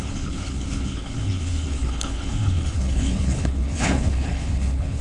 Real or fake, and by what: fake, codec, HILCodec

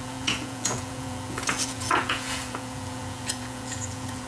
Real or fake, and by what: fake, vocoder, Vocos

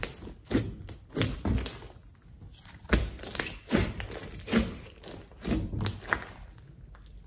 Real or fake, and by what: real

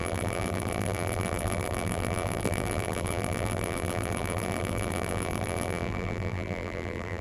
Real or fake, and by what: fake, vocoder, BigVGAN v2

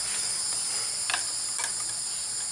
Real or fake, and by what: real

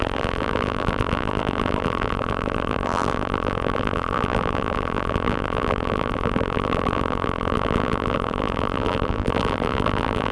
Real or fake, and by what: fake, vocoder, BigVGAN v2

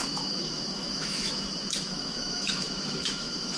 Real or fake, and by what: fake, autoencoder, DAC-VAE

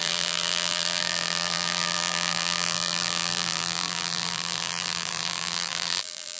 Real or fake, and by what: fake, vocoder, BigVGAN v2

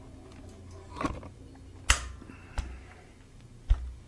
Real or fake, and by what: real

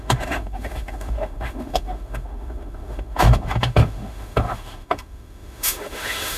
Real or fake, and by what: fake, autoencoder, DAC-VAE